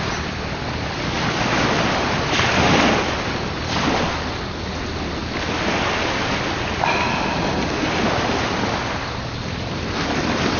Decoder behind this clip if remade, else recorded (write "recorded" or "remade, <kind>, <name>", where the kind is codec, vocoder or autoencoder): recorded